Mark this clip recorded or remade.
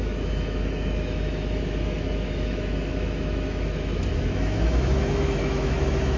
remade